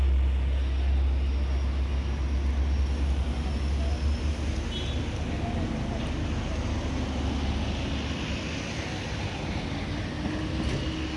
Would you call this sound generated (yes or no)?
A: no